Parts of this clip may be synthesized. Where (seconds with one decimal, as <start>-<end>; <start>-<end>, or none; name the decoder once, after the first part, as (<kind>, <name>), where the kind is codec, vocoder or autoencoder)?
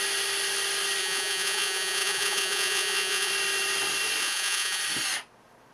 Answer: 1.0-3.3 (vocoder, Vocos); 4.2-4.8